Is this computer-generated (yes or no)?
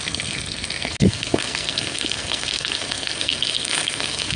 yes